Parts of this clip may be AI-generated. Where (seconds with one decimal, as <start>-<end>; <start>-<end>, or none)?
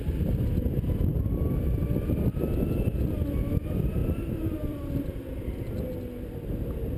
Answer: 1.1-1.7; 4.0-5.5